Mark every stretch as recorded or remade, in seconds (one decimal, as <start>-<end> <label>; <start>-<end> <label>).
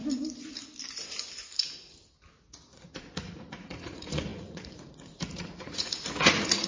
0.0-2.4 recorded; 2.4-6.7 remade